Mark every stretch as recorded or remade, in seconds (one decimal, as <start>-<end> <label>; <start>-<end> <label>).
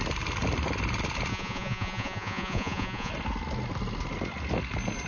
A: 0.0-1.3 recorded; 1.3-3.1 remade; 3.1-5.1 recorded